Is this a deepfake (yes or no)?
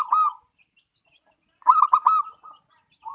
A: no